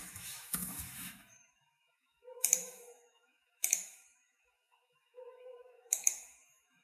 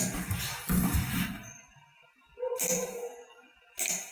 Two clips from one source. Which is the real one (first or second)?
second